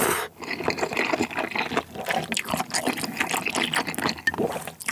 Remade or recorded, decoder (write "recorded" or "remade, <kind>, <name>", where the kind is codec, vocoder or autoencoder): recorded